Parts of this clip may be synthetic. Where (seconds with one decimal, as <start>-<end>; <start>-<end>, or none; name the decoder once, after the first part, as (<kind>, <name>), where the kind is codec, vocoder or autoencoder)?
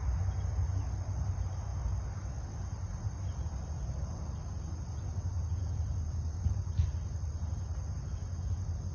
none